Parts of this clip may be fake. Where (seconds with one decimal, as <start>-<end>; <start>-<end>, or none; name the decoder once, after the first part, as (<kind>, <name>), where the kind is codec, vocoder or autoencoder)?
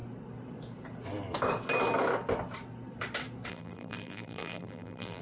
3.5-5.2 (vocoder, BigVGAN v2)